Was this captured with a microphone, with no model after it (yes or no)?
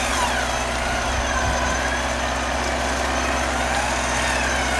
yes